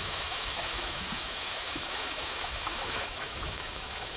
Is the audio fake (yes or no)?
yes